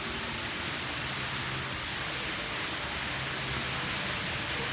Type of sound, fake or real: real